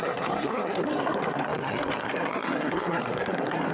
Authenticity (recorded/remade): remade